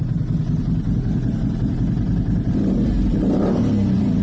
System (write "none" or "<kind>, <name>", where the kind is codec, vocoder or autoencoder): none